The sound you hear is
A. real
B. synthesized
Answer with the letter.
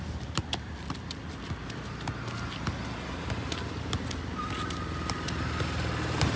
A